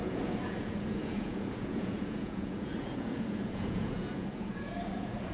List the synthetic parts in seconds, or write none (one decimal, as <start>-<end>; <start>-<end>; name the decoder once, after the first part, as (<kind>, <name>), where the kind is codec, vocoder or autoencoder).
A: 0.0-5.3 (vocoder, Vocos)